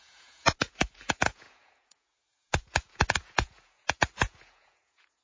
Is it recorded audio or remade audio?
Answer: remade